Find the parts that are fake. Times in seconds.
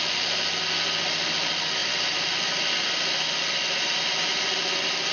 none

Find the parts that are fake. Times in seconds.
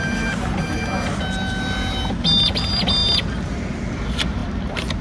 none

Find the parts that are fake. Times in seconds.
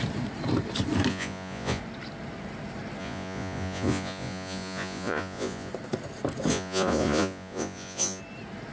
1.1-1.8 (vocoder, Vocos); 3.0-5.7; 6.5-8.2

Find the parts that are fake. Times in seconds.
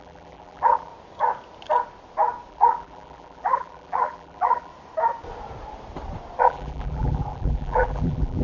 0.0-0.9 (vocoder, BigVGAN v2); 2.5-4.7; 6.4-8.4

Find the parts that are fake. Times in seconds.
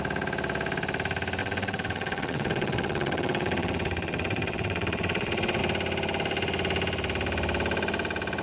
1.4-5.6 (vocoder, WaveNeXt)